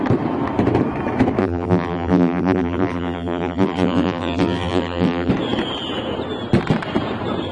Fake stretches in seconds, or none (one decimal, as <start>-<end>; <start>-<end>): 1.4-5.3